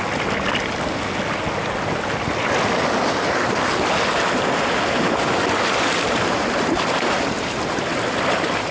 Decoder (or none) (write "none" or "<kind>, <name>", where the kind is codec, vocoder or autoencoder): none